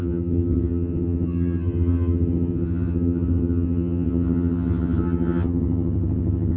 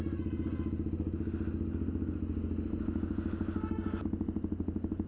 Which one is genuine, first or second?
second